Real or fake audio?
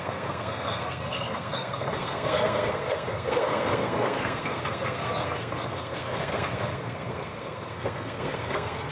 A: fake